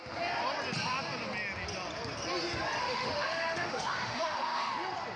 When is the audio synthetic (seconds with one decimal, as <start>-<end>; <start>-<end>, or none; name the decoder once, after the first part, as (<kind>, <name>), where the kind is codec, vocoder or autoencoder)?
2.8-4.7 (autoencoder, DAC-VAE)